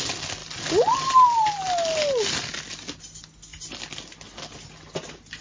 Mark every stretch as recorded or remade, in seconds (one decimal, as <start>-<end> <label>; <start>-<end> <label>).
0.0-5.4 recorded